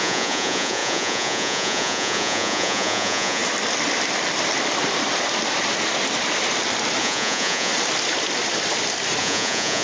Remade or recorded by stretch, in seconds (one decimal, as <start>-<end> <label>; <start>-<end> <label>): 0.0-3.4 remade; 3.4-7.0 recorded; 7.0-7.7 remade; 7.7-9.2 recorded; 9.2-9.8 remade